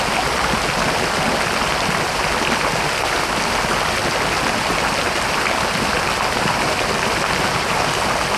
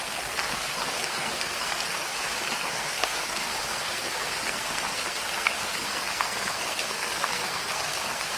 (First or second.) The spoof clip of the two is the second